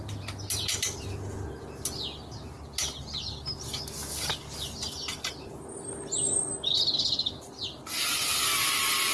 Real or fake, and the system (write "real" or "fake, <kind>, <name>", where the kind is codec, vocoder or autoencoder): real